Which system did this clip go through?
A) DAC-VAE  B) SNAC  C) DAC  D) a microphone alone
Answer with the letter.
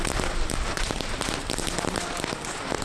D